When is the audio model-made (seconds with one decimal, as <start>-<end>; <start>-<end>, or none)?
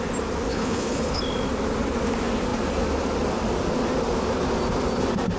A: 0.5-1.2